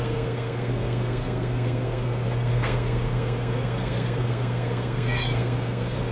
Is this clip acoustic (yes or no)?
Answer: no